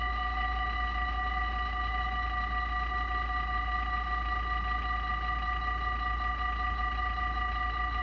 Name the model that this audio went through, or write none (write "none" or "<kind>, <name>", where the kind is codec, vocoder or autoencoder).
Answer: none